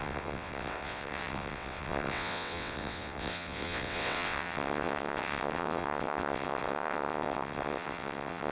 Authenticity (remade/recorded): remade